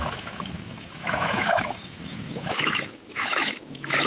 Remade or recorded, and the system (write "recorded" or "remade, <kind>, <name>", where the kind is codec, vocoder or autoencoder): remade, autoencoder, DAC-VAE